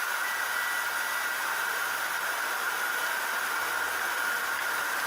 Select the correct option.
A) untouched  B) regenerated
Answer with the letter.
A